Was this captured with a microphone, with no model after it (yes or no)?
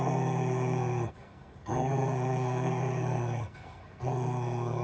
no